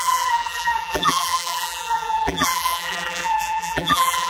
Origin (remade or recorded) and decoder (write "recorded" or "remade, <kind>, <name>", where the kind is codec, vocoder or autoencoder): remade, vocoder, BigVGAN v2